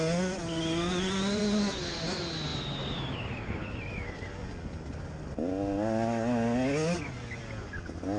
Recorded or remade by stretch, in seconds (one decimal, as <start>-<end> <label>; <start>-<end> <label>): 0.0-0.9 recorded; 0.9-1.4 remade; 1.4-8.2 recorded